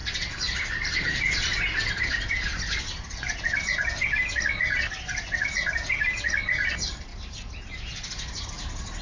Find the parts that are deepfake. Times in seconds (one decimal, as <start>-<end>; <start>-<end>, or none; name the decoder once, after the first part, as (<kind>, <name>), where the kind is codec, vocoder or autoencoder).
none

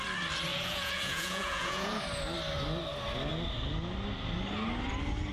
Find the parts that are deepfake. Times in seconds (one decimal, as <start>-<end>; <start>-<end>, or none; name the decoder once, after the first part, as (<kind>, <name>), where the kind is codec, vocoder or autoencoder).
0.5-2.0 (vocoder, Vocos)

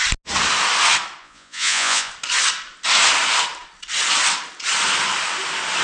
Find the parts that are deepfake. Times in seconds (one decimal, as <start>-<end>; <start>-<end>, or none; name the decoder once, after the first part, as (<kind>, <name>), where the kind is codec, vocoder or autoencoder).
1.2-2.1 (vocoder, Vocos)

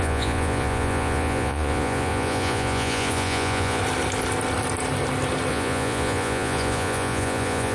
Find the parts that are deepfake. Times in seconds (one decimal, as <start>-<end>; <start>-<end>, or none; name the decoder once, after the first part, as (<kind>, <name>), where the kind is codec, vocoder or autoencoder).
0.0-3.8 (vocoder, Vocos); 5.5-7.7

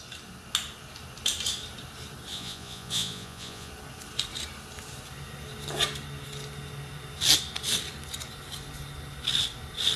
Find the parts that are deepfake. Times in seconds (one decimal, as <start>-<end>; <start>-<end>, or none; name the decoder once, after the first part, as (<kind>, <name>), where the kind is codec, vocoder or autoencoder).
2.3-3.7 (vocoder, Vocos)

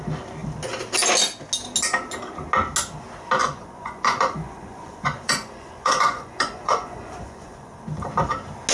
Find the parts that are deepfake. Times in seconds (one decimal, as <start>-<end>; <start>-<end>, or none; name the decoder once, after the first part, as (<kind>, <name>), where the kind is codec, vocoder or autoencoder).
3.4-7.8 (vocoder, Vocos)

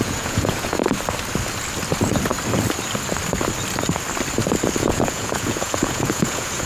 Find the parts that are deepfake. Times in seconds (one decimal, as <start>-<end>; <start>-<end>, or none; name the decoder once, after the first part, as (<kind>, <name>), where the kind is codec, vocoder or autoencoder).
0.0-0.8 (vocoder, Vocos); 4.8-6.7